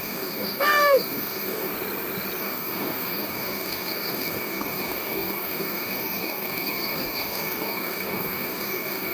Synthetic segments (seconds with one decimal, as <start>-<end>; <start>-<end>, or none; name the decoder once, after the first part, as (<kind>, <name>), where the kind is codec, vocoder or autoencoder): 0.0-1.7 (codec, DAC); 2.4-9.1

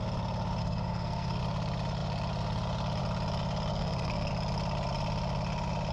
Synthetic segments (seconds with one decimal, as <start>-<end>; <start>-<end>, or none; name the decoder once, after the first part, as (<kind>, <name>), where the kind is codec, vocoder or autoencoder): 0.6-1.4 (codec, SNAC); 3.7-4.3

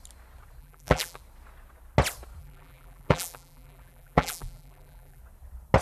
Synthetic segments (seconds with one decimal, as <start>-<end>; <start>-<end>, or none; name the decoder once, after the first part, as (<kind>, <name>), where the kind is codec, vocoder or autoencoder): 0.6-1.2 (vocoder, BigVGAN v2); 2.4-5.2

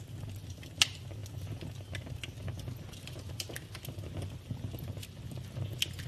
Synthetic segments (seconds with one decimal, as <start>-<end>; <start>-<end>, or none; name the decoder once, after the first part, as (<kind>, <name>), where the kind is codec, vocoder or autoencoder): none

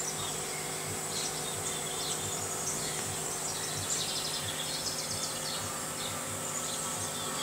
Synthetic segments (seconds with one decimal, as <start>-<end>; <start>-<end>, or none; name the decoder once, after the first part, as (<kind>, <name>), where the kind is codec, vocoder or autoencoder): none